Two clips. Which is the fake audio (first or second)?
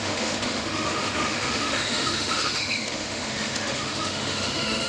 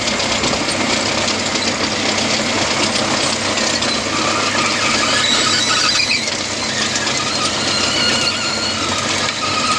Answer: first